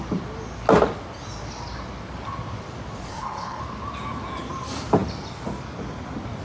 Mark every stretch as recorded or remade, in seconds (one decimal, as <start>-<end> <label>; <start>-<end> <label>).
0.0-3.1 recorded; 3.1-3.6 remade; 3.6-6.4 recorded